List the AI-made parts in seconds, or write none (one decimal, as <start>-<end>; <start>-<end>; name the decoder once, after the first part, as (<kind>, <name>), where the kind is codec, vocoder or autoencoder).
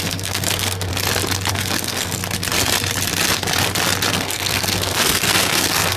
0.0-0.9 (codec, SNAC); 1.5-2.2; 4.1-6.0